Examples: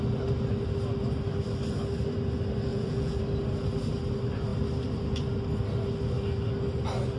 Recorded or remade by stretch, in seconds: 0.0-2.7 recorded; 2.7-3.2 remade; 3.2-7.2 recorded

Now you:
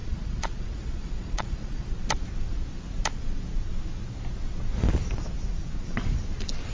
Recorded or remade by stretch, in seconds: 0.0-1.9 remade; 1.9-6.7 recorded